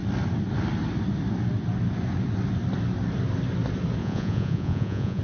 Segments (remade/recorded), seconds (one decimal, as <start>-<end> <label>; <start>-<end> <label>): 0.0-4.0 recorded; 4.0-5.2 remade